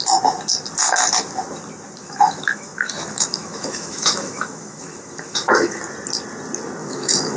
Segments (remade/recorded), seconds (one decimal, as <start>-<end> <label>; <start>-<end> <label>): 0.0-2.0 recorded; 2.0-5.8 remade; 5.8-6.8 recorded; 6.8-7.4 remade